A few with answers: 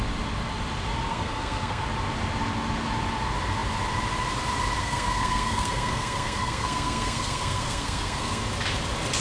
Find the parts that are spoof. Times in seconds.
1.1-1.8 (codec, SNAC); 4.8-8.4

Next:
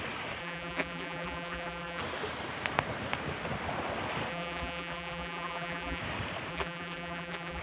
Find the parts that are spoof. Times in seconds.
0.4-2.0 (vocoder, BigVGAN v2); 4.3-6.0; 6.5-7.6

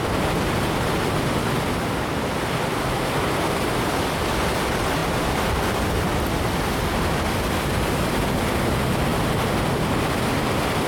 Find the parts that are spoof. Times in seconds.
none

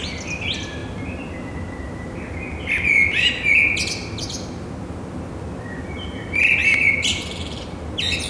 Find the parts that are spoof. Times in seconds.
none